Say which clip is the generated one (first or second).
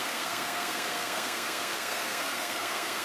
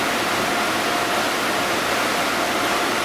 first